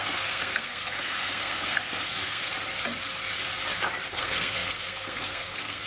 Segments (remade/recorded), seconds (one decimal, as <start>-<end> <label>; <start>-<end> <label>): 0.0-2.5 remade; 2.5-4.1 recorded; 4.1-5.9 remade